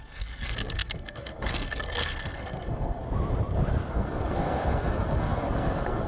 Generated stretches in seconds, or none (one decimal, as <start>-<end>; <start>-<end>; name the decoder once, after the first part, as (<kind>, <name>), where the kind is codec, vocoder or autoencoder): 0.0-3.0 (codec, SNAC); 3.9-6.1